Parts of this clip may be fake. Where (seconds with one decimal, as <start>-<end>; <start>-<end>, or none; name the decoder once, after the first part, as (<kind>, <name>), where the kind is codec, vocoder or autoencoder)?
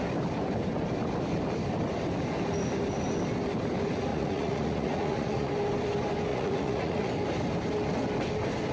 4.1-5.5 (vocoder, Vocos); 6.3-7.1